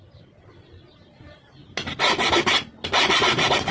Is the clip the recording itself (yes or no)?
yes